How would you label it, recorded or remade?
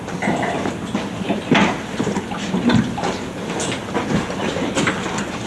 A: recorded